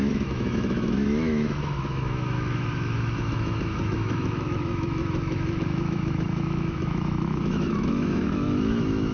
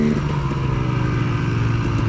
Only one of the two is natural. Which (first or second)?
second